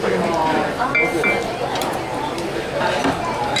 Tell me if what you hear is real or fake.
real